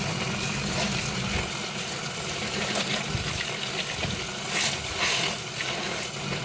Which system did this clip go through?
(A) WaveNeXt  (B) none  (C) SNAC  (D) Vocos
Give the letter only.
B